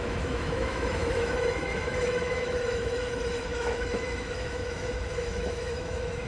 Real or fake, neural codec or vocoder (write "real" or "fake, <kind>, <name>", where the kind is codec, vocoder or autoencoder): fake, autoencoder, DAC-VAE